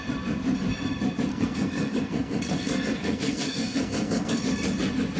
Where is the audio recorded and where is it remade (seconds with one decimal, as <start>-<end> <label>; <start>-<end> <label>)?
0.0-1.3 recorded; 1.3-4.4 remade; 4.4-5.2 recorded